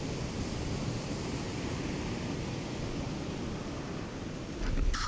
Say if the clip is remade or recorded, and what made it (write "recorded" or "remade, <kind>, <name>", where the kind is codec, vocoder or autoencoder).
recorded